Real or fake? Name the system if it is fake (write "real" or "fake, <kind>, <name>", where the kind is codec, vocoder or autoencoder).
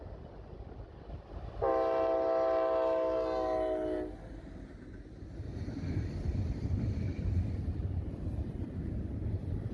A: real